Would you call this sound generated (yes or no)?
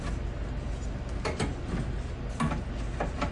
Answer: no